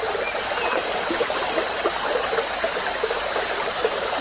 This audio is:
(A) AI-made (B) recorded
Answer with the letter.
B